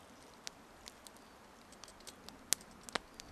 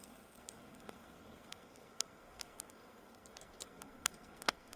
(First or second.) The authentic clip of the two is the first